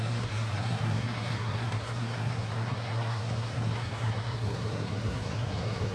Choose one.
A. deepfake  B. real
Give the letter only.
A